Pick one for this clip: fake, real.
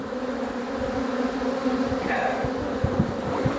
real